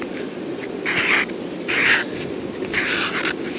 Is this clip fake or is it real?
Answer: real